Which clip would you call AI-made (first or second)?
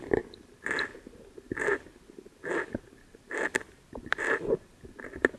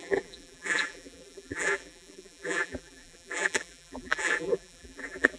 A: second